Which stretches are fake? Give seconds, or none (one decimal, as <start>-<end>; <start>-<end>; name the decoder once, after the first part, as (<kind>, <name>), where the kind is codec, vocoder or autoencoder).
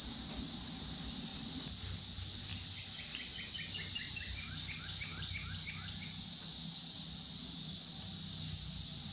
none